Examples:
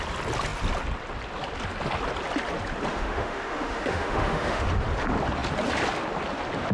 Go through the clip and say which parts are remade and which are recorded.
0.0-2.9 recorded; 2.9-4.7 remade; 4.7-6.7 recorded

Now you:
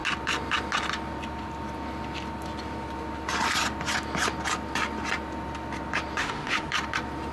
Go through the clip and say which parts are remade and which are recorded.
0.0-6.2 recorded; 6.2-6.7 remade; 6.7-7.3 recorded